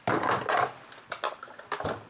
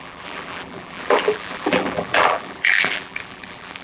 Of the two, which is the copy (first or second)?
second